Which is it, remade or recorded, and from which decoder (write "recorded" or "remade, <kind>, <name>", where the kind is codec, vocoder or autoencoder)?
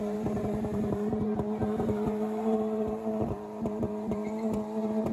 remade, vocoder, BigVGAN v2